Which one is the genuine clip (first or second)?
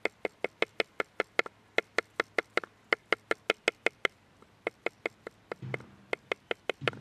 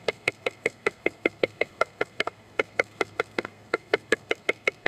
first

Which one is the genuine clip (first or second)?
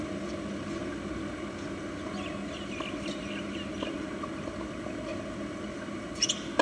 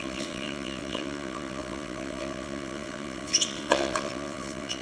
first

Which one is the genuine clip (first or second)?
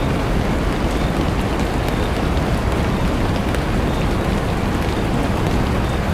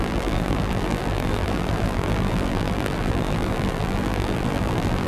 first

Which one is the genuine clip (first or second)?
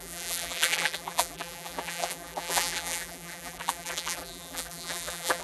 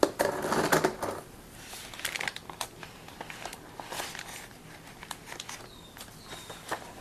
second